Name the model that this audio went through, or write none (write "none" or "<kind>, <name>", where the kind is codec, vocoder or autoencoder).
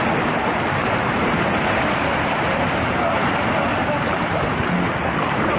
vocoder, BigVGAN v2